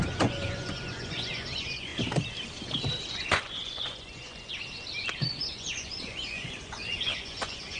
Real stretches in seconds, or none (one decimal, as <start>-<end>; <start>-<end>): 1.9-3.1; 4.5-5.4